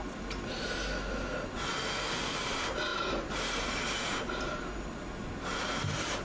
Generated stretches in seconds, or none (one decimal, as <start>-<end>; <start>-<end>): 2.9-3.8